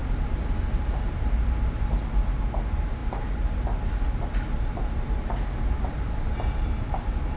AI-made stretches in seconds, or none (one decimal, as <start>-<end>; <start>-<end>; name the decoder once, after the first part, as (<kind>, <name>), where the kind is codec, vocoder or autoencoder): none